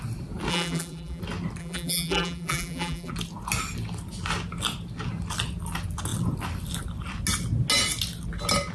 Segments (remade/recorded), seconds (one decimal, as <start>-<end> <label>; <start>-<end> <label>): 0.0-0.5 recorded; 0.5-1.2 remade; 1.2-1.6 recorded; 1.6-3.1 remade; 3.1-8.7 recorded